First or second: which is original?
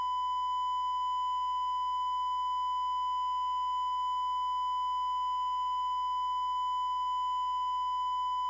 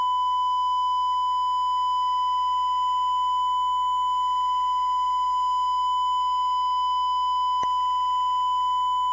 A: first